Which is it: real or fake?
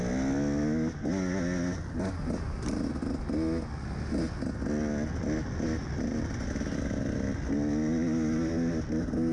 real